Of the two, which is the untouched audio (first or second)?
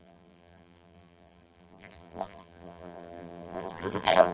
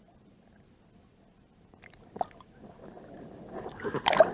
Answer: second